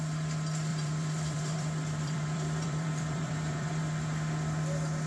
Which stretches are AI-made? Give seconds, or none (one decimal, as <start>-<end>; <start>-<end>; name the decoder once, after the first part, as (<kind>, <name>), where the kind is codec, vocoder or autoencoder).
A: 0.7-3.8 (vocoder, BigVGAN v2)